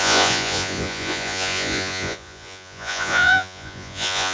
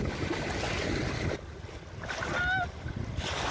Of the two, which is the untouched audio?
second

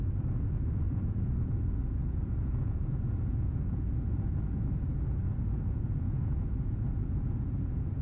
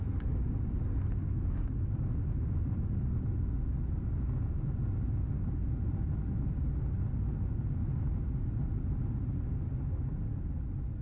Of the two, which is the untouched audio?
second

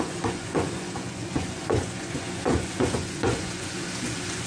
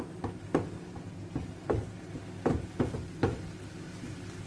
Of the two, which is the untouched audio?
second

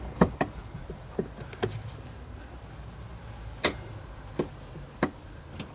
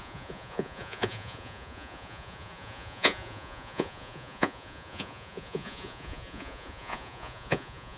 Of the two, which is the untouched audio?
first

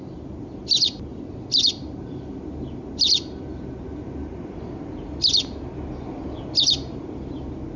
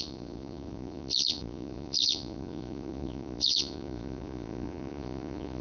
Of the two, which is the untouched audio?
first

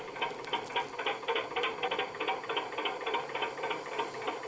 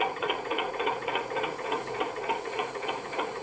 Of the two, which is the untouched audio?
first